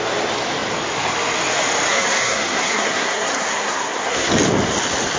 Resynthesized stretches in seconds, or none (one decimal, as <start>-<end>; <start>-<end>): 1.9-4.3